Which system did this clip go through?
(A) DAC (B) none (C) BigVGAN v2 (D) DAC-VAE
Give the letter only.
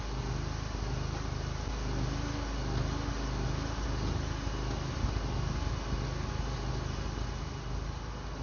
B